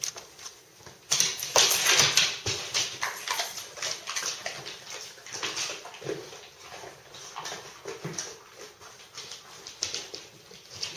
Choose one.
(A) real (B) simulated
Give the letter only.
A